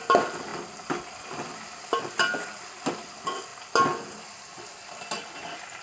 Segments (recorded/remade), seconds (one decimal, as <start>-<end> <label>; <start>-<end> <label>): 0.0-5.8 recorded